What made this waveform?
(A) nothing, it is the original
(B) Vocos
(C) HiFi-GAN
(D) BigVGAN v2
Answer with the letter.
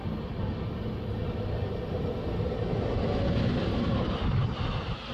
A